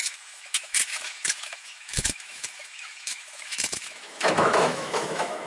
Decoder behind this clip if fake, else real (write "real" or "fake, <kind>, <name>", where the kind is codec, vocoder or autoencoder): fake, autoencoder, DAC-VAE